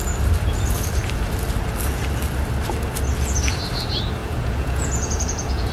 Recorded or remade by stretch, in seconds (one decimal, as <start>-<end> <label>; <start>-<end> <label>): 0.0-4.2 recorded; 4.2-5.7 remade